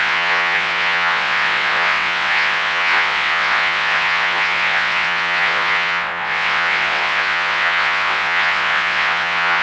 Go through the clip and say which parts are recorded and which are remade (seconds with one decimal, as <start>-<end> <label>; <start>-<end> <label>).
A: 0.0-9.6 remade